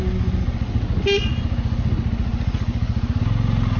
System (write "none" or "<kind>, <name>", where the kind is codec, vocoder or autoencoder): none